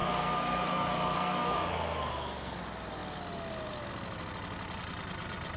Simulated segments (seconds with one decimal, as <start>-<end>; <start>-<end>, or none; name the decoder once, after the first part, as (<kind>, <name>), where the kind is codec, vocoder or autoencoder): 0.0-2.6 (codec, SNAC)